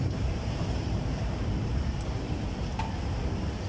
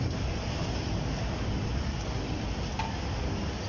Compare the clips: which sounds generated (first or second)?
first